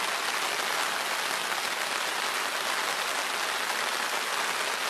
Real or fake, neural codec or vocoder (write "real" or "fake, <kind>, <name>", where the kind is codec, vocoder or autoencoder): real